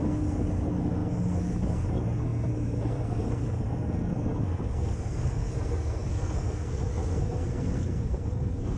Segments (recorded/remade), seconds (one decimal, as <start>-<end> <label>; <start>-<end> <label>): 0.0-8.8 remade